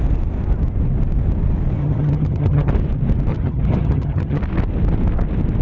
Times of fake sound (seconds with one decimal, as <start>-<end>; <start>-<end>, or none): 1.8-2.7; 3.3-4.4